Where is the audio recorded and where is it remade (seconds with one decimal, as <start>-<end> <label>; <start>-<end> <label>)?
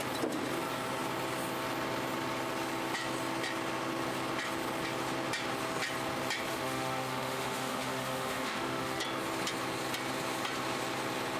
0.0-6.5 recorded; 6.5-9.0 remade; 9.0-11.4 recorded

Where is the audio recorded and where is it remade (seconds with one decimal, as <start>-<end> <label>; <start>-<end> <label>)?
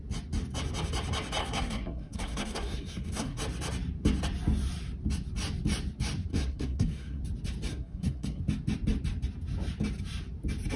0.0-1.4 recorded; 1.4-3.4 remade; 3.4-6.3 recorded; 6.3-7.2 remade; 7.2-7.7 recorded; 7.7-8.4 remade; 8.4-10.8 recorded